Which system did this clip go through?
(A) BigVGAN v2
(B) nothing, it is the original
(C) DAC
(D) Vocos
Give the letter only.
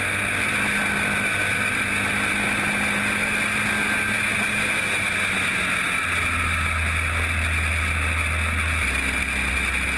B